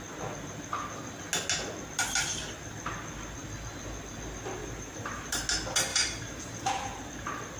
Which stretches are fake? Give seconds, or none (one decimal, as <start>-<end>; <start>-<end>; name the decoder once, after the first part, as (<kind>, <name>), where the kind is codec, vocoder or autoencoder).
4.6-5.3 (vocoder, BigVGAN v2); 5.9-7.0